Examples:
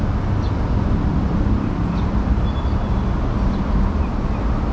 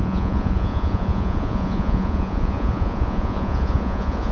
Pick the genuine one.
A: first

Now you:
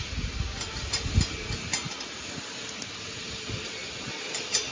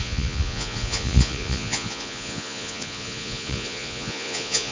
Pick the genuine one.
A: first